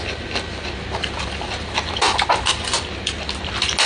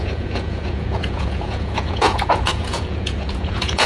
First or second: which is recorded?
first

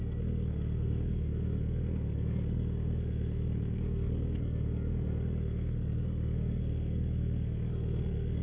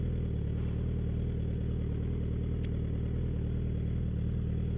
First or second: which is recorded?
second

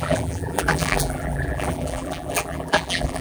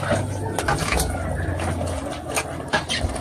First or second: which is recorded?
second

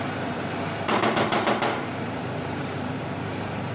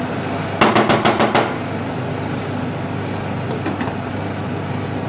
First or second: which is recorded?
second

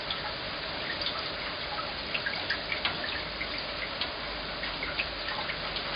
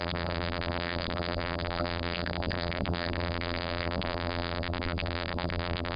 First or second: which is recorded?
first